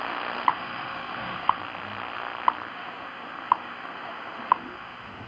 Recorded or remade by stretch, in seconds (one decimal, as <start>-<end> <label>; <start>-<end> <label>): 0.0-0.5 recorded; 0.5-1.6 remade; 1.6-2.7 recorded; 2.7-5.3 remade